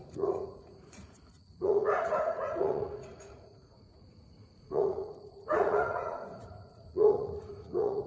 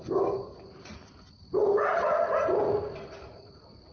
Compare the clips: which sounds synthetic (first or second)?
first